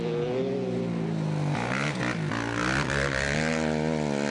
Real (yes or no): yes